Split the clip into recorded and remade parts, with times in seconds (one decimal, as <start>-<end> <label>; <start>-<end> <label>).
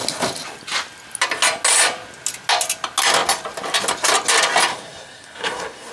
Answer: 0.0-4.7 recorded; 4.7-5.9 remade